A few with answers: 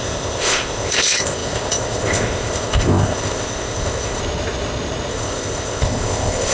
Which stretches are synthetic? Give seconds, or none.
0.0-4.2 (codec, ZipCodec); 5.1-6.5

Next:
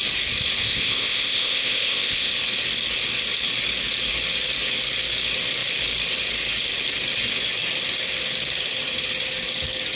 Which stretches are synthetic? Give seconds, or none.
0.6-2.3 (codec, ZipCodec)

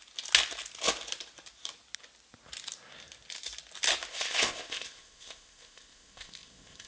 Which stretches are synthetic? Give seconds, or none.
4.1-6.9 (codec, ZipCodec)

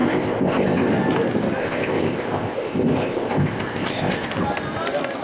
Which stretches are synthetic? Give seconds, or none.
0.0-0.9 (codec, ZipCodec); 1.6-4.3

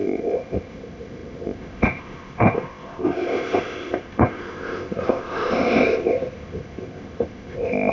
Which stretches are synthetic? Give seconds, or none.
0.0-7.9 (codec, ZipCodec)

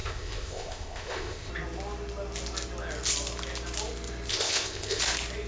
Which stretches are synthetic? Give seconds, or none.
0.0-1.5 (codec, ZipCodec); 4.3-5.0

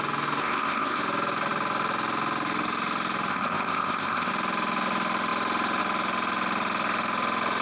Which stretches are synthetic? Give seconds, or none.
0.4-1.0 (codec, ZipCodec); 3.3-4.3

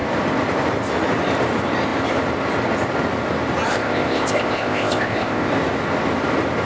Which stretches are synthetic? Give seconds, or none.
3.7-5.5 (codec, ZipCodec)